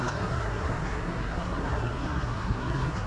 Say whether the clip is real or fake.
fake